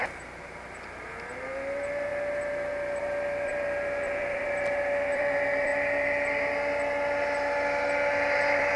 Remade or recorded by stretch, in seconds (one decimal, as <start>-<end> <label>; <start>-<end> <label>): 0.0-1.6 recorded; 1.6-2.1 remade; 2.1-3.0 recorded; 3.0-5.7 remade; 5.7-8.4 recorded; 8.4-8.8 remade